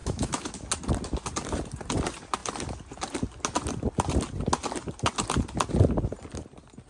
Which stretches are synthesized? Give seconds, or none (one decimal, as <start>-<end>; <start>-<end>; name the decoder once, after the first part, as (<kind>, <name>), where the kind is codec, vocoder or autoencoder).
0.0-0.5 (autoencoder, DAC-VAE)